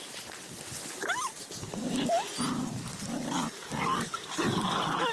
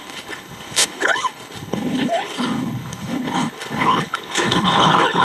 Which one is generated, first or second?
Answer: second